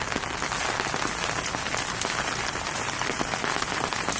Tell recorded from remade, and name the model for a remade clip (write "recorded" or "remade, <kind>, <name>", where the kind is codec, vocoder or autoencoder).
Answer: recorded